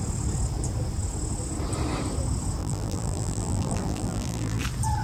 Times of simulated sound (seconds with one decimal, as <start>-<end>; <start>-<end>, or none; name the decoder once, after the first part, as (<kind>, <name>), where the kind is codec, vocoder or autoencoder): 2.6-4.6 (vocoder, BigVGAN v2)